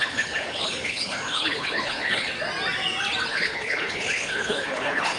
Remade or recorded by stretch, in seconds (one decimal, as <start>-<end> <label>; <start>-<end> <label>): 0.0-2.3 remade; 2.3-3.3 recorded; 3.3-5.2 remade